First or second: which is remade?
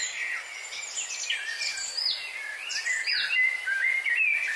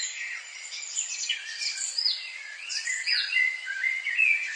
second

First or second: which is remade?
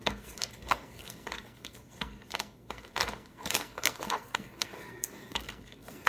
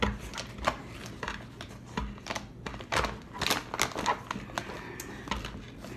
first